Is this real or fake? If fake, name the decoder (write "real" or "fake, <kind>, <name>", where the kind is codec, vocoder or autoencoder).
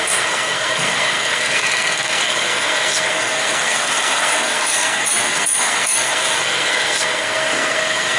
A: fake, codec, SNAC